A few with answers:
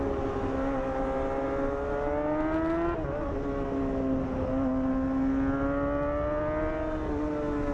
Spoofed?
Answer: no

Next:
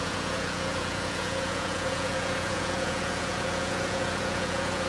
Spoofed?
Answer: yes